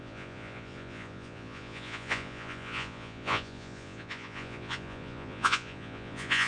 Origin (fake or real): fake